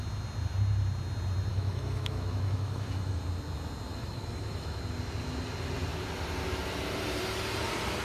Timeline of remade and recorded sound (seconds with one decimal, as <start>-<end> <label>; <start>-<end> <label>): 0.0-1.5 recorded; 1.5-3.2 remade; 3.2-3.9 recorded; 3.9-4.8 remade; 4.8-8.0 recorded